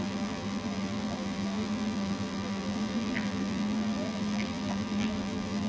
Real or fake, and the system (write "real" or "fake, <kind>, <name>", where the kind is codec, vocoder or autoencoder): fake, vocoder, BigVGAN v2